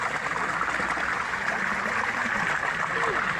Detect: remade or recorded recorded